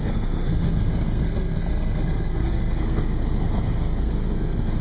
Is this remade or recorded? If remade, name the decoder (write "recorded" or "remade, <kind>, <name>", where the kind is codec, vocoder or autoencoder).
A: remade, codec, SNAC